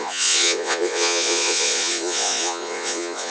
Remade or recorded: remade